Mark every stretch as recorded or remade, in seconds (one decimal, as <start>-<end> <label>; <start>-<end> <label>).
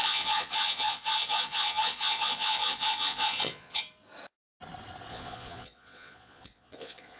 0.0-3.8 remade; 3.8-5.1 recorded; 5.1-7.2 remade